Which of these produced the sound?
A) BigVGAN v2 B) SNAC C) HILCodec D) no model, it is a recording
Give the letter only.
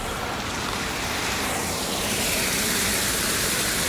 A